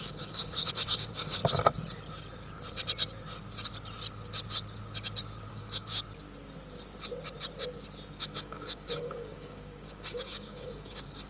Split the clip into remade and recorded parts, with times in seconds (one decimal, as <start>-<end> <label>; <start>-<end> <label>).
0.0-1.4 remade; 1.4-5.5 recorded; 5.5-5.9 remade; 5.9-8.2 recorded; 8.2-11.3 remade